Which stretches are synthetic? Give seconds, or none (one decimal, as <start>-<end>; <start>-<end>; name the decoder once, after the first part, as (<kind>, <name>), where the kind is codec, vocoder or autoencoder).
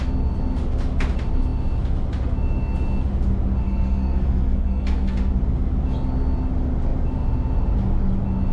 3.6-5.3 (codec, SNAC)